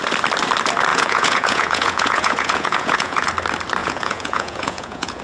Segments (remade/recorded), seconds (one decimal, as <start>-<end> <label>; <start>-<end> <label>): 0.0-0.9 recorded; 0.9-3.3 remade; 3.3-3.8 recorded; 3.8-5.2 remade